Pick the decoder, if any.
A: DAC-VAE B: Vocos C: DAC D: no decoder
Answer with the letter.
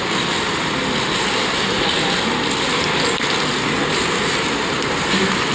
D